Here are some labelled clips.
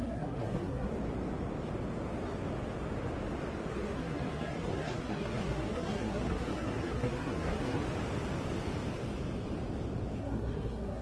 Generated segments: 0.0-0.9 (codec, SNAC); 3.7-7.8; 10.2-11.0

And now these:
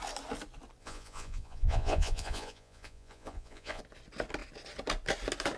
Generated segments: 0.8-3.8 (vocoder, Vocos)

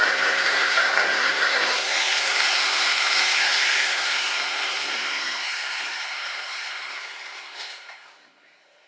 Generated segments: 0.0-8.9 (codec, SNAC)